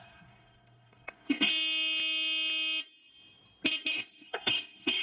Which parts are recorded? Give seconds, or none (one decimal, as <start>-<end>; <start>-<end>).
1.5-3.9